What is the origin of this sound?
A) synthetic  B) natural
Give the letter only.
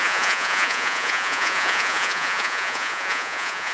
A